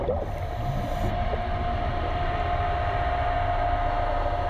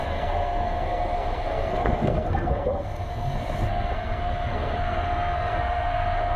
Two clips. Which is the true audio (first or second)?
first